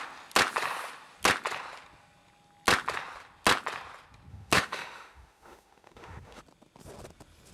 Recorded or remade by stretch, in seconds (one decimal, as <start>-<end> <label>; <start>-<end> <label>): 0.0-4.3 recorded; 4.3-6.4 remade; 6.4-7.5 recorded